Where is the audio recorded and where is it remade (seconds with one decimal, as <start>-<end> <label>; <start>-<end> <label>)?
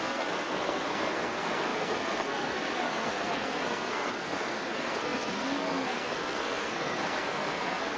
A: 0.0-8.0 remade